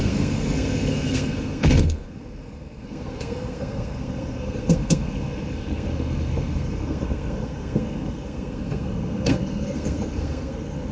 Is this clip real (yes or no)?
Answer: no